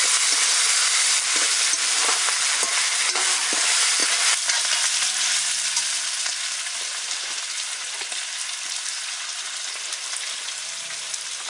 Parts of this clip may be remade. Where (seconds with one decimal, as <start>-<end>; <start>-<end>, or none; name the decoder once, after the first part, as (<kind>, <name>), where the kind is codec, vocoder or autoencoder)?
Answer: none